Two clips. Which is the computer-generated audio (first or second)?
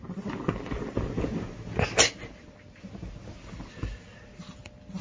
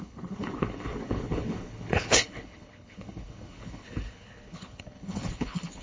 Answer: second